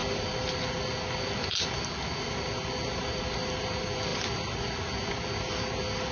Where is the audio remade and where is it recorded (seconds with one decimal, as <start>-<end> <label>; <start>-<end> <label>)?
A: 0.0-6.1 recorded